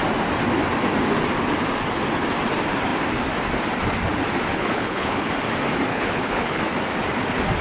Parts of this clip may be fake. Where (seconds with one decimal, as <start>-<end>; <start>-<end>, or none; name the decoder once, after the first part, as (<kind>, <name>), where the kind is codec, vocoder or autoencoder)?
4.5-5.3 (codec, HILCodec); 5.9-6.6